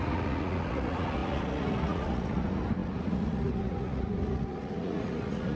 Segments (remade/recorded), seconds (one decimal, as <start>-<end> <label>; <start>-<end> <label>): 0.0-5.6 remade